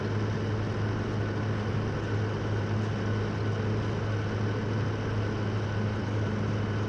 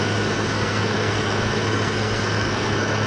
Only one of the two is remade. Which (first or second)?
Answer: second